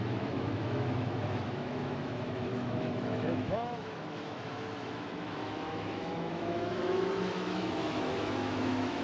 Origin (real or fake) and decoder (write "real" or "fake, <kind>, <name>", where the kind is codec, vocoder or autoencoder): fake, autoencoder, DAC-VAE